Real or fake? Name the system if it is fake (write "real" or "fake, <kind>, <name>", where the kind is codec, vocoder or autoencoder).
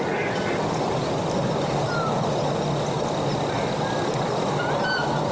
real